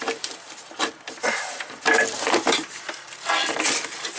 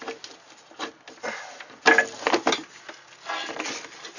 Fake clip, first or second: first